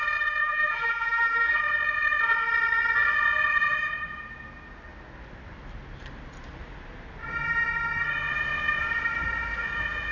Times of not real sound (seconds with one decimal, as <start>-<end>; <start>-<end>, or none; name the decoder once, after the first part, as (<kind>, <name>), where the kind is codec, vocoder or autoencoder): 0.4-1.6 (vocoder, BigVGAN v2)